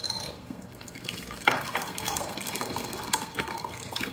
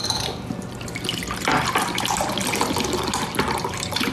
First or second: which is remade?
first